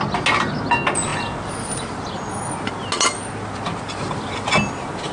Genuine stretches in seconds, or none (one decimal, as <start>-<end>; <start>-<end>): 0.0-5.1